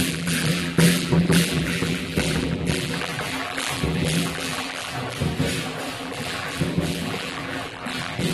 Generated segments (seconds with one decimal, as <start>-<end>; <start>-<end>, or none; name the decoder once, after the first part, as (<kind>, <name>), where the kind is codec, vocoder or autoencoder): 0.0-5.2 (vocoder, BigVGAN v2); 6.0-8.3